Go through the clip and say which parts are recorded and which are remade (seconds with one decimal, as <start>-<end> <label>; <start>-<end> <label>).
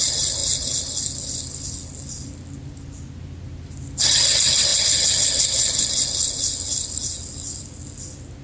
0.0-8.4 recorded